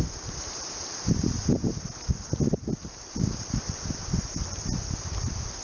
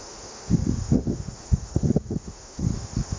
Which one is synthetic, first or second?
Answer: second